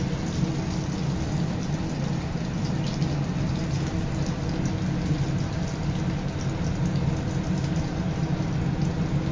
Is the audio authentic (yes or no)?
yes